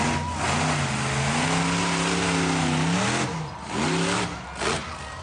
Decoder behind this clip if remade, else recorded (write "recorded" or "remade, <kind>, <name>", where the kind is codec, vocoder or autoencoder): recorded